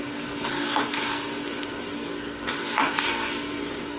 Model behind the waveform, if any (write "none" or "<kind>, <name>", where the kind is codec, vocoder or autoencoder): codec, SNAC